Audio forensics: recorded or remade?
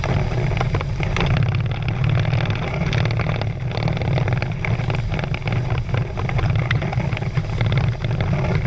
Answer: recorded